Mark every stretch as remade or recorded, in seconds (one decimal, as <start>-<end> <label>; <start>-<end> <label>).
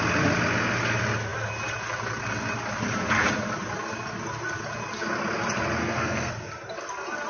0.0-5.8 recorded; 5.8-6.3 remade; 6.3-7.3 recorded